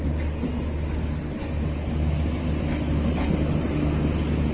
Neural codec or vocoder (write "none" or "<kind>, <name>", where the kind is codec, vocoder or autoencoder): none